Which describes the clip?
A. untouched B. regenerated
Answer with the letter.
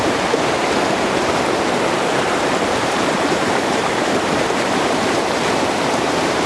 B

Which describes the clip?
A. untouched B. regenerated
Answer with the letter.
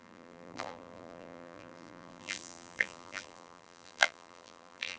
B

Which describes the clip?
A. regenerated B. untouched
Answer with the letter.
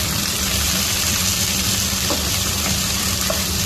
A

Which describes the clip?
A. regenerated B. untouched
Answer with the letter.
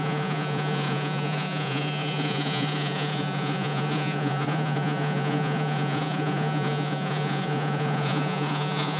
A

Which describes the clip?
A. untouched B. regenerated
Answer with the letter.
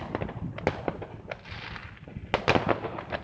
A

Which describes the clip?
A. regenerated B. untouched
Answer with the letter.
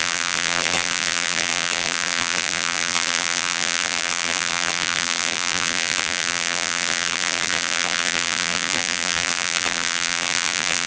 A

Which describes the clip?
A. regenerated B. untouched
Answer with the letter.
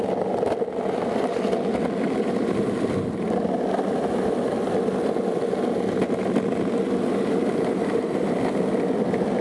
B